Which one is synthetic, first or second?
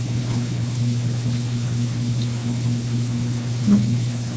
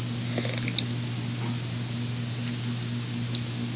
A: first